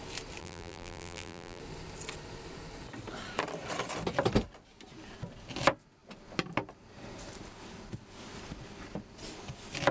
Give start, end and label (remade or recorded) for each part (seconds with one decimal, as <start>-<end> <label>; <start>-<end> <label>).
0.0-0.4 recorded; 0.4-1.6 remade; 1.6-9.9 recorded